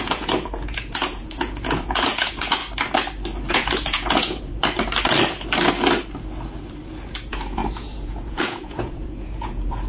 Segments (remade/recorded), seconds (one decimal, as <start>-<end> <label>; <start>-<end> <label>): 0.0-2.6 remade; 2.6-3.5 recorded; 3.5-4.5 remade; 4.5-7.1 recorded; 7.1-9.9 remade